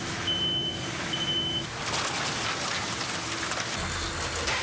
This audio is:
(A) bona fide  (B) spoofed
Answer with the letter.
A